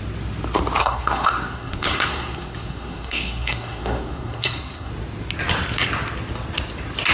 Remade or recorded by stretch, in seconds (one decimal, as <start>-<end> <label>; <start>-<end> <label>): 0.0-0.8 recorded; 0.8-4.9 remade; 4.9-7.1 recorded